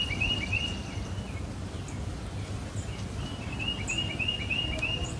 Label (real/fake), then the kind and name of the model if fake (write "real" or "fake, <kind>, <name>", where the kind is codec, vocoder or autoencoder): real